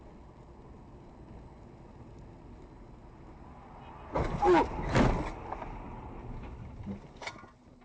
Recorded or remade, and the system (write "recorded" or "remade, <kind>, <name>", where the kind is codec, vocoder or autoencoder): recorded